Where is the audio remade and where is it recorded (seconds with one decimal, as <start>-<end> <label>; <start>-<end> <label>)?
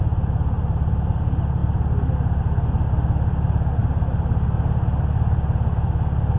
0.0-6.4 recorded